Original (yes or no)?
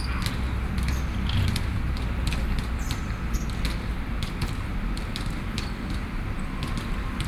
yes